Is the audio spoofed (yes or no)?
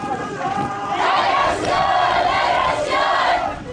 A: yes